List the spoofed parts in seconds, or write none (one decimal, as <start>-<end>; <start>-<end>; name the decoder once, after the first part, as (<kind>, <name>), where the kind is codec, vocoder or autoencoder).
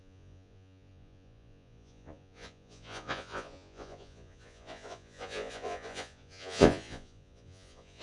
0.0-8.0 (vocoder, Vocos)